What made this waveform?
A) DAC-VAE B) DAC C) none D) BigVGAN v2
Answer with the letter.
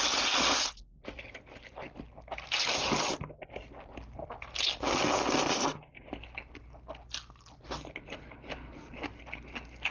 C